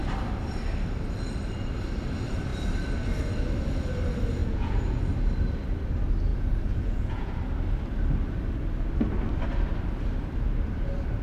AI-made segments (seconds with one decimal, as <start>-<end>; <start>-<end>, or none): 4.4-5.0; 6.3-7.4